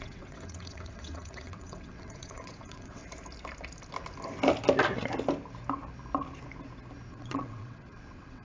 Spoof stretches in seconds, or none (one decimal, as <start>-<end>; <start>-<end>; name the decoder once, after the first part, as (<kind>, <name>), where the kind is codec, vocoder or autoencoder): 0.0-3.0 (vocoder, WaveNeXt); 7.1-8.4